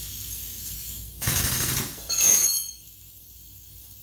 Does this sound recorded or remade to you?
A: remade